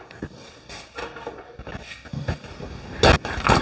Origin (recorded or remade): recorded